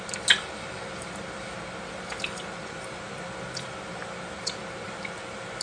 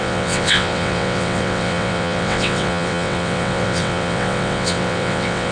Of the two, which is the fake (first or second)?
second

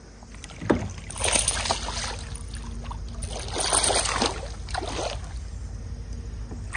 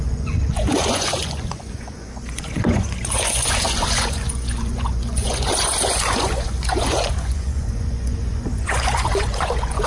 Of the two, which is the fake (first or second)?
second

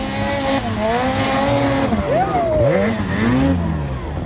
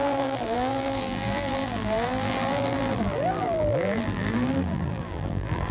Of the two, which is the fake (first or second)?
second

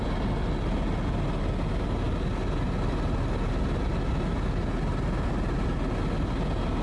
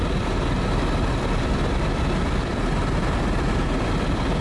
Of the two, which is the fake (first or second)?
second